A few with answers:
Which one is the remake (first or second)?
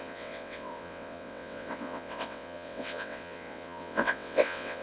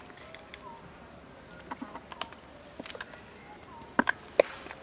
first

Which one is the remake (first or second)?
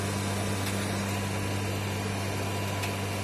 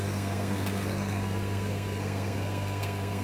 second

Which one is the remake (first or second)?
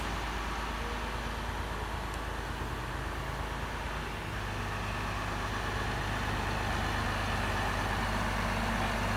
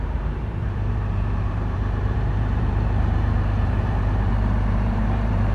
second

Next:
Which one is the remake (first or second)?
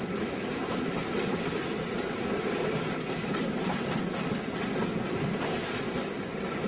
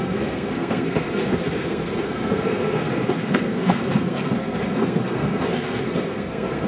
second